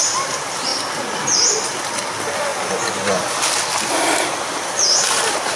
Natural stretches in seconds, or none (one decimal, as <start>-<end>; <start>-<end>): 0.0-5.6